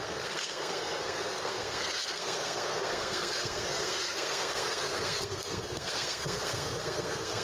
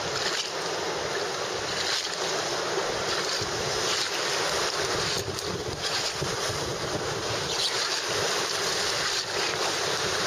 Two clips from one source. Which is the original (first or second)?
second